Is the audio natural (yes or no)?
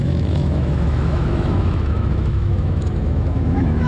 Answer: no